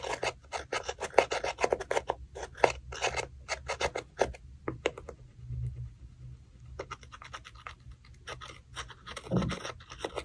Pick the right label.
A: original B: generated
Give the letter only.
A